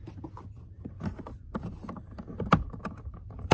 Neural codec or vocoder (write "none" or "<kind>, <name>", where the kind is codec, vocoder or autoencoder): vocoder, BigVGAN v2